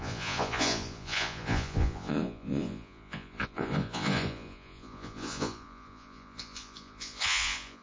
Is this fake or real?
fake